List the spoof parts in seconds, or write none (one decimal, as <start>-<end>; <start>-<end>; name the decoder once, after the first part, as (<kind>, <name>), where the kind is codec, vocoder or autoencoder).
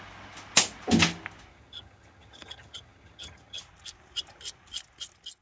1.5-3.6 (vocoder, HiFi-GAN)